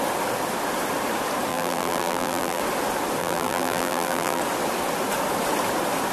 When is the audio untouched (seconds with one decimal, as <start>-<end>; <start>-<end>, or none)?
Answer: 0.0-1.5; 2.6-3.2; 4.4-6.1